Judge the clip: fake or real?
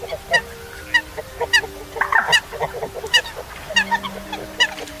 real